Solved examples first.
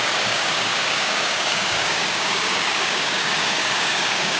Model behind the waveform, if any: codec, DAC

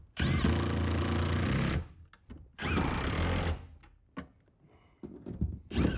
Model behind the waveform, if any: none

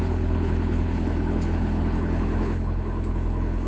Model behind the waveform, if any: codec, HILCodec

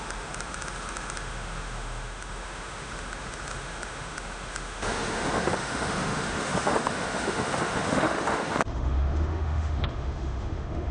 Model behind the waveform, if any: autoencoder, DAC-VAE